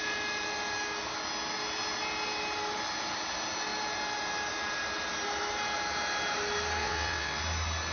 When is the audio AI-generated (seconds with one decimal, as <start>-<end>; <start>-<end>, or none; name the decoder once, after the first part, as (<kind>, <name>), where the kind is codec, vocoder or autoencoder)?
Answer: 6.8-7.4 (vocoder, WaveNeXt)